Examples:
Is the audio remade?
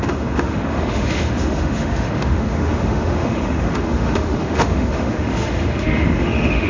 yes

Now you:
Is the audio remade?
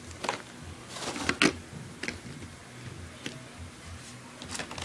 no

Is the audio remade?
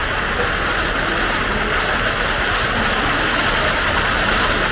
no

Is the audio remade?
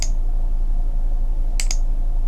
no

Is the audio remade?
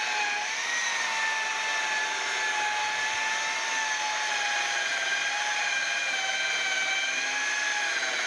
no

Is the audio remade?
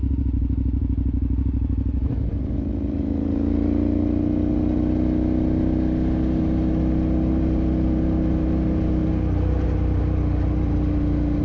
no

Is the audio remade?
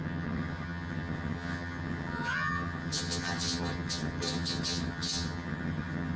yes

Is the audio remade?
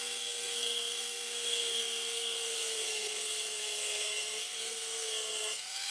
yes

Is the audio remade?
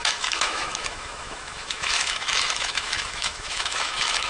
yes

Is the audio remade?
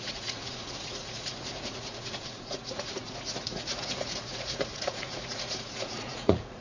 yes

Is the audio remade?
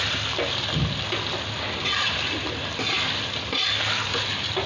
no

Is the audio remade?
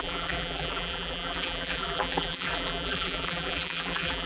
yes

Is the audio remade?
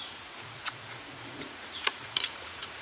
yes